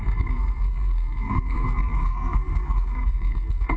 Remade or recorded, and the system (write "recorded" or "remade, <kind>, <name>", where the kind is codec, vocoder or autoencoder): remade, codec, SNAC